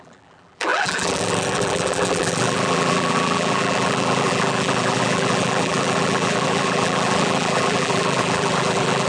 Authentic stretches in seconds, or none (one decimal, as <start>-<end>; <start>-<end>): none